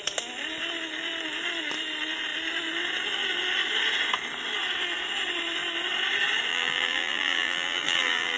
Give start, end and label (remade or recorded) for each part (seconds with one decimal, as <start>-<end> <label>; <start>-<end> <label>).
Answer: 0.0-6.5 recorded; 6.5-8.4 remade